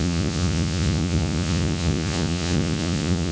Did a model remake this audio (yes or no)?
yes